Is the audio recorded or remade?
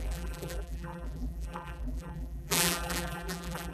remade